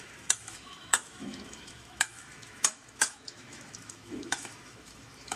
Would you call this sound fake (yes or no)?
yes